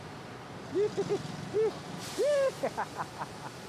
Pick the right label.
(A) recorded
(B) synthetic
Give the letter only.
A